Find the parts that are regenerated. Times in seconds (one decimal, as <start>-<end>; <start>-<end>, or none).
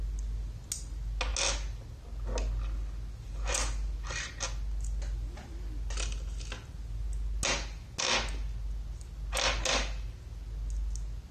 none